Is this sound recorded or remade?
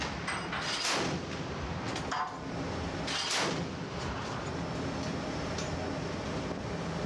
recorded